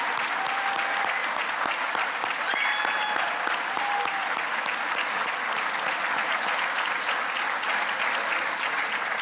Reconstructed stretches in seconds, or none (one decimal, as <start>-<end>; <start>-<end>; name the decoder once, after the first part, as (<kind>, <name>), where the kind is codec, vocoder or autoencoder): none